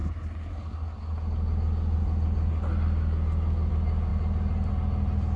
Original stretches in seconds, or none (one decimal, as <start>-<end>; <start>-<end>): 0.0-5.4

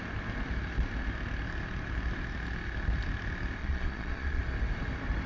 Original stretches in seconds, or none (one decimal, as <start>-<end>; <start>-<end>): 0.0-3.6; 4.4-5.3

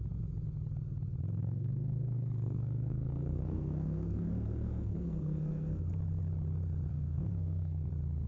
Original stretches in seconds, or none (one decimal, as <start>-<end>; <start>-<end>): 0.0-1.4; 5.9-6.9; 7.9-8.3

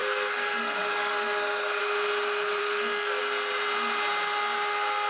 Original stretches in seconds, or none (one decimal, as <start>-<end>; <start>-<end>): 1.8-2.6; 3.2-5.1

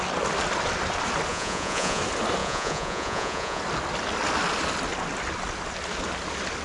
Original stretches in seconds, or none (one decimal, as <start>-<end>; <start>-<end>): 0.0-1.3; 2.0-2.4; 3.6-6.6

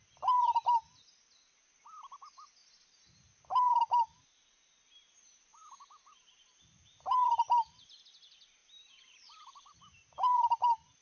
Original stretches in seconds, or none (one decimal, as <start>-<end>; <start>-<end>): 0.0-5.5; 8.0-8.6

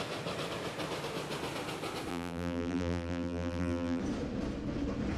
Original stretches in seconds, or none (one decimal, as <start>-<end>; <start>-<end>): 0.0-2.1; 4.0-5.2